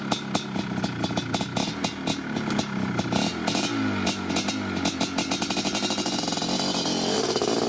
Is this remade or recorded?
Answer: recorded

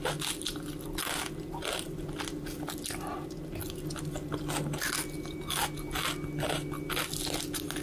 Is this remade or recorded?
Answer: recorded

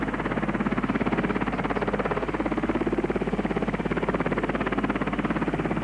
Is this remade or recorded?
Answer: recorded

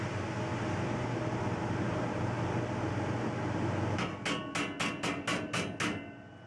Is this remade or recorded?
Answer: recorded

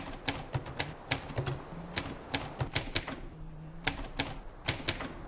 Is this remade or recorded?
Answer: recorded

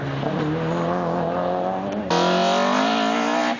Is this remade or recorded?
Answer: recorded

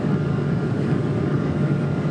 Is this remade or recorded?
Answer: remade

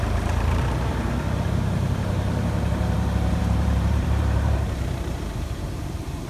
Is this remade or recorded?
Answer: remade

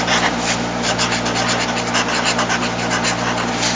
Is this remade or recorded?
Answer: recorded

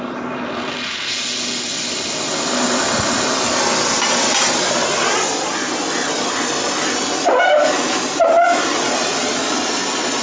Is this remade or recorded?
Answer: recorded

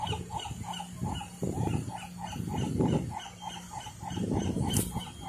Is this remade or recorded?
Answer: recorded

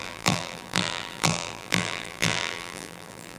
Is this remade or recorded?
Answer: remade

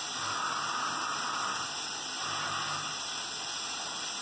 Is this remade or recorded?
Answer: recorded